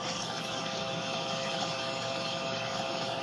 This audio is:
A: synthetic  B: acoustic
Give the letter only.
A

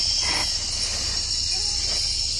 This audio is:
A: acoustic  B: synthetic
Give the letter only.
A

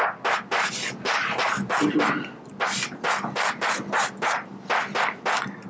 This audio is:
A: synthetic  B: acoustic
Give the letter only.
B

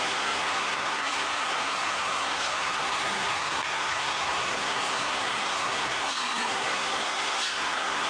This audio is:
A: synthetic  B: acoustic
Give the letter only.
A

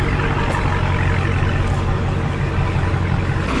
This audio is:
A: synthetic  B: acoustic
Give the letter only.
B